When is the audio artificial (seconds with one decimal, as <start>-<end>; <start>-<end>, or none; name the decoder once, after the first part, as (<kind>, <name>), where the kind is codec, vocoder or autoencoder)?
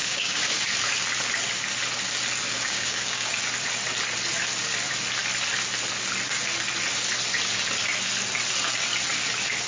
0.0-0.7 (codec, DAC); 2.5-3.3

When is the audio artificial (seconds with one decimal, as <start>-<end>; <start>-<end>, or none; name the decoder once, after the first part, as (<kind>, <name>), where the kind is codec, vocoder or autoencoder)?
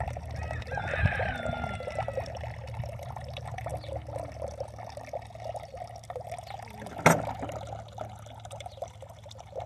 0.0-3.7 (vocoder, BigVGAN v2); 8.5-9.7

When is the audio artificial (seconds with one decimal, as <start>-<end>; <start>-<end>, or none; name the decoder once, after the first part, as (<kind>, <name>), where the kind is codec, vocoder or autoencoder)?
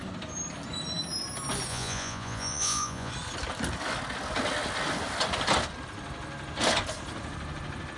1.7-3.1 (vocoder, Vocos)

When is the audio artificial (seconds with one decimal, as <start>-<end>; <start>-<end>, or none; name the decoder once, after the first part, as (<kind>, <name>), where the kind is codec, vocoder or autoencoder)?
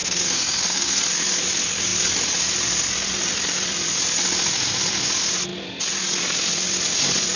0.0-1.0 (codec, SNAC)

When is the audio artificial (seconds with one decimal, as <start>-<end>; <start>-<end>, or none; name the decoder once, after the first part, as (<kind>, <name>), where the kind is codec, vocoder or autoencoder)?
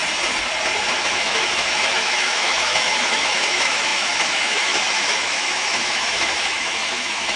1.0-7.4 (autoencoder, DAC-VAE)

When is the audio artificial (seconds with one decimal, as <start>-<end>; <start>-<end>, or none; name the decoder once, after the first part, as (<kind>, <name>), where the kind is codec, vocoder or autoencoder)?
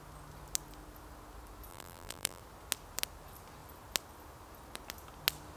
1.7-2.4 (vocoder, BigVGAN v2)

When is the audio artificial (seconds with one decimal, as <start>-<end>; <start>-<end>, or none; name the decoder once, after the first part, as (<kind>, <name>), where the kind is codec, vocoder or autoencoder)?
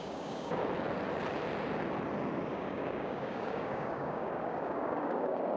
0.0-0.6 (codec, DAC); 2.5-5.6